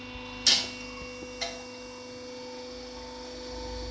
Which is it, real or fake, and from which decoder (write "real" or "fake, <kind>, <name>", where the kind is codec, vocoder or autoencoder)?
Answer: real